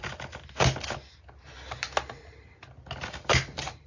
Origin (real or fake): real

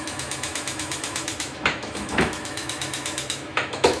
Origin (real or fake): fake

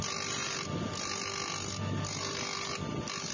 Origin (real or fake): real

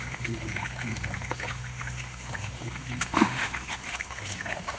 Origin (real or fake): fake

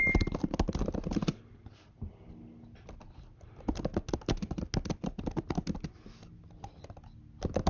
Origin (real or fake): real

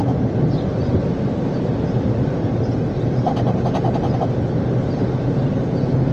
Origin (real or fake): real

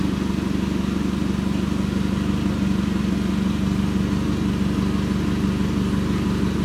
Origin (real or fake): real